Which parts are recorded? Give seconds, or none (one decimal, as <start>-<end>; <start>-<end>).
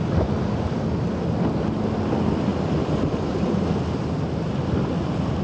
0.0-2.5; 3.5-5.4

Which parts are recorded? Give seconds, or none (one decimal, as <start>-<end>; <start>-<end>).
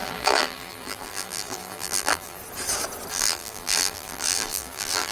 2.4-3.1